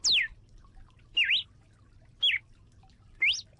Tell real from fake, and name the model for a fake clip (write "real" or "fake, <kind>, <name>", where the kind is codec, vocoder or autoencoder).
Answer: real